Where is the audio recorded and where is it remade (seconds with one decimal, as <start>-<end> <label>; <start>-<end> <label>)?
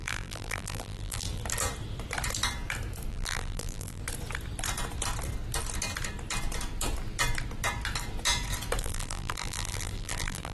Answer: 0.0-1.4 remade; 1.4-3.1 recorded; 3.1-4.0 remade; 4.0-8.8 recorded; 8.8-10.5 remade